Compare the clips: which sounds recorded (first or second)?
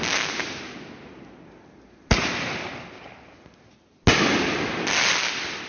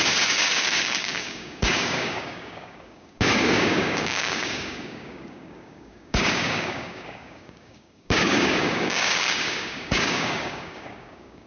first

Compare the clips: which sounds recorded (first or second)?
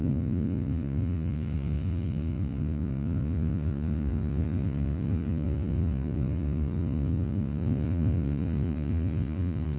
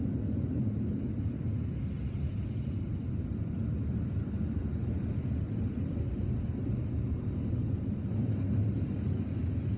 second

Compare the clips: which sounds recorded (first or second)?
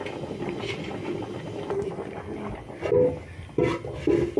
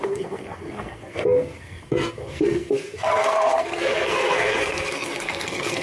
first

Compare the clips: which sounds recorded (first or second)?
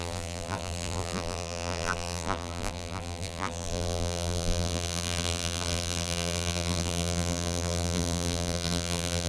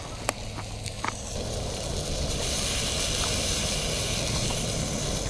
second